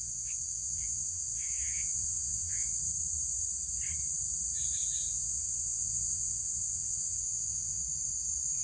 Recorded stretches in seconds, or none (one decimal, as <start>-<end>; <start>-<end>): 2.8-5.1; 7.8-8.6